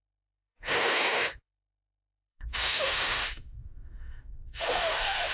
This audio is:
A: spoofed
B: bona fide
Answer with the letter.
A